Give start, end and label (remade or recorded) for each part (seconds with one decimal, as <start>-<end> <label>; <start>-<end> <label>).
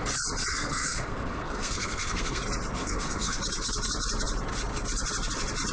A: 0.0-0.5 recorded; 0.5-2.4 remade; 2.4-2.8 recorded; 2.8-3.4 remade; 3.4-5.7 recorded